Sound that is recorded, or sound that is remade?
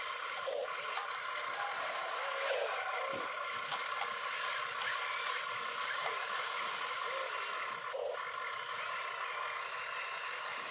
recorded